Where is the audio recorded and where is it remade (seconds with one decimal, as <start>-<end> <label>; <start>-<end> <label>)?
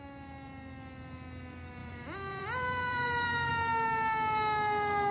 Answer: 0.0-1.8 recorded; 1.8-3.5 remade; 3.5-5.1 recorded